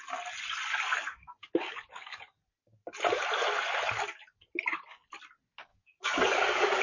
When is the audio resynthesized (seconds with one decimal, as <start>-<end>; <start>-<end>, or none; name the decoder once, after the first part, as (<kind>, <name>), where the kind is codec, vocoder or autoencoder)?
0.9-2.3 (codec, DAC); 5.7-6.8